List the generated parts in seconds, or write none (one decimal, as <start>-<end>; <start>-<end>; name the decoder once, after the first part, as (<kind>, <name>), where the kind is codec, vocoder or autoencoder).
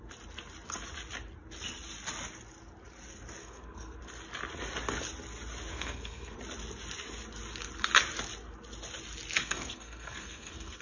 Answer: 3.4-4.0 (codec, SNAC); 5.7-6.4; 9.4-10.8